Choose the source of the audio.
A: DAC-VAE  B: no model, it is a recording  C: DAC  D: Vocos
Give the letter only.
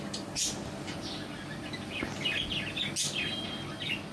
B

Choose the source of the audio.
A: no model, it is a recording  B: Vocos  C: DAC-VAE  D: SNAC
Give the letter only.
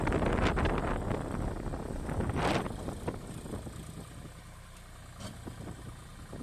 A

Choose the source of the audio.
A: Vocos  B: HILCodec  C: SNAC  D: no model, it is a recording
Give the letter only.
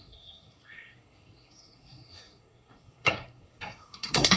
C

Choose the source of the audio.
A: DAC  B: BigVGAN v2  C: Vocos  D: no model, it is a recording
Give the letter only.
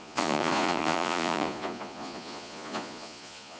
C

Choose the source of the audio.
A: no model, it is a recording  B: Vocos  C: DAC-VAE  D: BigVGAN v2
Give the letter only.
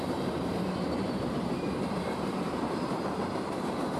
D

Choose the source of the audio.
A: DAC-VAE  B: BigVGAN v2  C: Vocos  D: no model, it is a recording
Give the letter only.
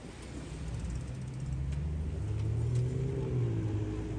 D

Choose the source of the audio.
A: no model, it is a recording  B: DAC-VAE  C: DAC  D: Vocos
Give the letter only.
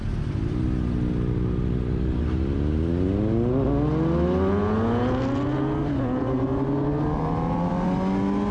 A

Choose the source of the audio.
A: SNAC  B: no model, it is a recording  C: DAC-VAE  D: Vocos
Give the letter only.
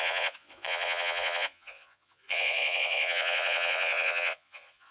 D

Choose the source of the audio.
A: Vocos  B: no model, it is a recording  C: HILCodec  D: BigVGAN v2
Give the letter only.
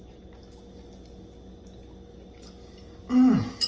B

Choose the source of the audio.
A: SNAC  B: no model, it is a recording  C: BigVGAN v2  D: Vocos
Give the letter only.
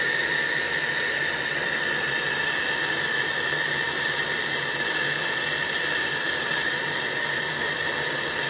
B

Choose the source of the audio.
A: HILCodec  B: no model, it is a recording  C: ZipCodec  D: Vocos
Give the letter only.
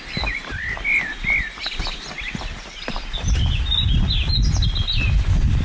B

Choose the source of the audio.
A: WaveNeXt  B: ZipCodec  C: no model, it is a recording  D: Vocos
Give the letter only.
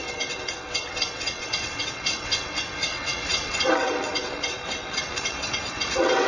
A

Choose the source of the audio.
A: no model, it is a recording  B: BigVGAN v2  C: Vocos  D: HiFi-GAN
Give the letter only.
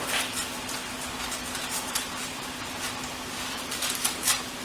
B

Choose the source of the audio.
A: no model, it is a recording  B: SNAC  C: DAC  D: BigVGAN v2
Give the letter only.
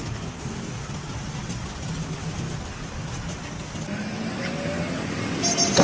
A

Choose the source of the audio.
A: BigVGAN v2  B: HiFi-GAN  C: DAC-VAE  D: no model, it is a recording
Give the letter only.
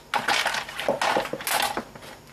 D